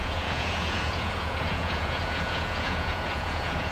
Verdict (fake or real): fake